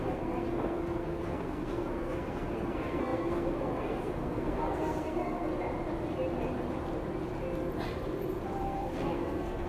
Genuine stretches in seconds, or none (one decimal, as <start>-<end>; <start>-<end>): 5.5-8.6